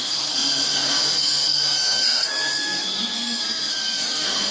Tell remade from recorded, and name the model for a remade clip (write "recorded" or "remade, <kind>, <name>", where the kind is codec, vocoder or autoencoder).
remade, codec, SNAC